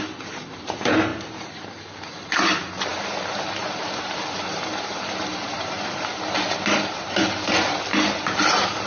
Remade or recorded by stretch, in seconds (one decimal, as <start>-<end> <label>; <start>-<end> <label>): 0.0-7.9 remade; 7.9-8.4 recorded; 8.4-8.9 remade